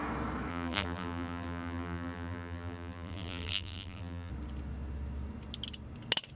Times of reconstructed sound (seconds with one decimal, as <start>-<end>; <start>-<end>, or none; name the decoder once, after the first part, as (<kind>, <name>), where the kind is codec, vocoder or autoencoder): 0.5-4.3 (vocoder, BigVGAN v2)